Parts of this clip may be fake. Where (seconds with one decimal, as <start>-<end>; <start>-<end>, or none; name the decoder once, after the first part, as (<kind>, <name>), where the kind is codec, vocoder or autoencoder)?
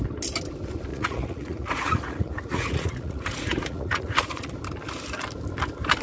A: 0.9-4.5 (vocoder, Vocos)